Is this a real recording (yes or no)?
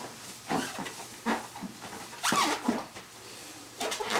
no